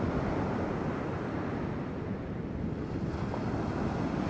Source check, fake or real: real